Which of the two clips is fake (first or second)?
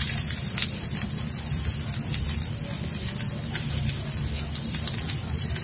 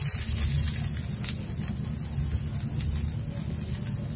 first